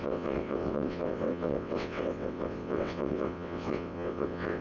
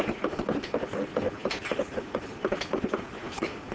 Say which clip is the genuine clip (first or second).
second